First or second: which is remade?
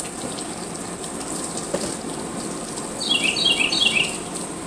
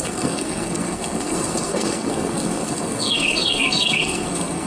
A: second